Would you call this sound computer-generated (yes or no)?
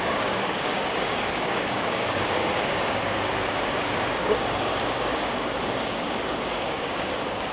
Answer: yes